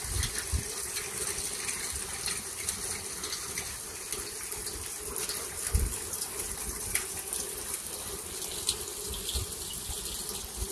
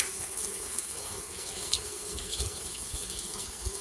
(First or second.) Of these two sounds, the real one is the first